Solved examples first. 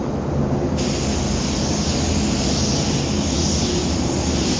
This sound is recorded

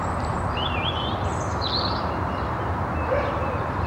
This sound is remade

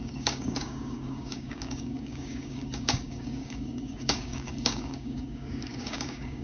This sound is remade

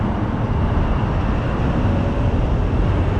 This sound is remade